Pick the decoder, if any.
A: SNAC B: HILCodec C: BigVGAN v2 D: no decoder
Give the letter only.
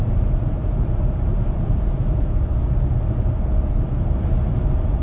C